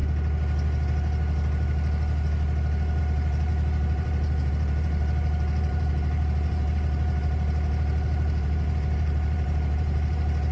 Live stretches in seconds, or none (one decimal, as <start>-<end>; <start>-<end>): 0.0-3.0